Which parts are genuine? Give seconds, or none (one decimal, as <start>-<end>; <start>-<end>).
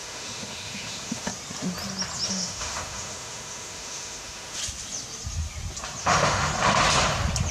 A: 1.3-2.3; 4.6-6.0; 6.5-7.5